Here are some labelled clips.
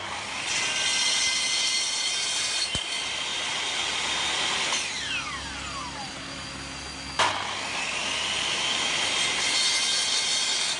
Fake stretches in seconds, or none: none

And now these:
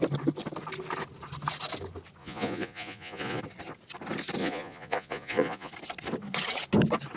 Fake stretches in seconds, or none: 2.2-3.4 (vocoder, Vocos); 4.4-5.7

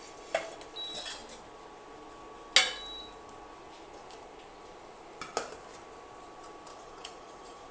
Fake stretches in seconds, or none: 6.7-7.7 (vocoder, Vocos)

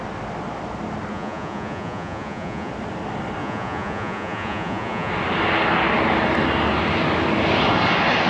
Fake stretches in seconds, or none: 1.1-2.7 (vocoder, Vocos); 3.4-5.1